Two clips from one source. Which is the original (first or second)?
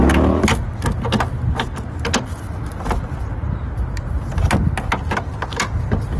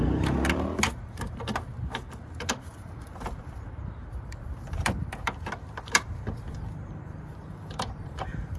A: first